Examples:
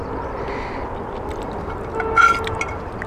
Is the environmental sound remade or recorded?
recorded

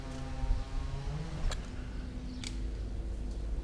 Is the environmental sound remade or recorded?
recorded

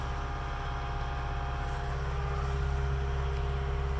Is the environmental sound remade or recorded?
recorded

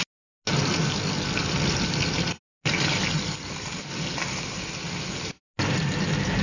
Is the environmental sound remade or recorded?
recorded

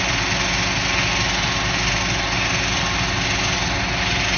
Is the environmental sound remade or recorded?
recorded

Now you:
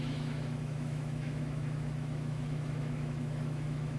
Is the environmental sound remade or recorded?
remade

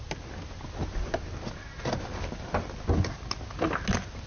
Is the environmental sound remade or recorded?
recorded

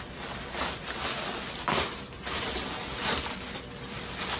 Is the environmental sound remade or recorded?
recorded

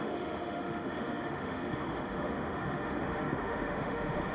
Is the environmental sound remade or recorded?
remade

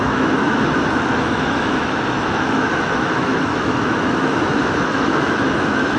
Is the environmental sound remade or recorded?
remade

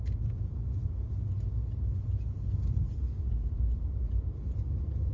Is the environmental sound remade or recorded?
recorded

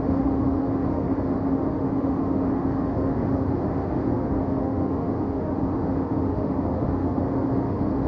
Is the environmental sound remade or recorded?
remade